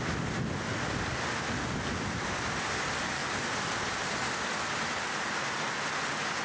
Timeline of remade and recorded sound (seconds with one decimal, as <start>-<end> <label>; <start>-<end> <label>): 0.0-6.4 recorded